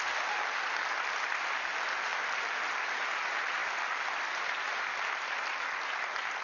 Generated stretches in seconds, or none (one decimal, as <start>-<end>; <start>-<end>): none